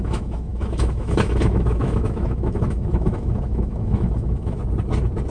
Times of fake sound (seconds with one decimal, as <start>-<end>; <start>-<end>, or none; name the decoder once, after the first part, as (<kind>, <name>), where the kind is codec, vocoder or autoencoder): 0.0-4.6 (autoencoder, DAC-VAE)